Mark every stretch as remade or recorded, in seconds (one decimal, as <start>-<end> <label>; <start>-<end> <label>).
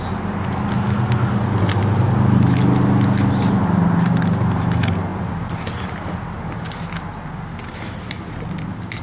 0.0-9.0 recorded